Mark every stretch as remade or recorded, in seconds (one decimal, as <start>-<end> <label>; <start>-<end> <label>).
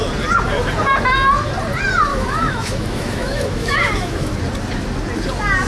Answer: 0.0-2.1 recorded; 2.1-4.4 remade; 4.4-5.7 recorded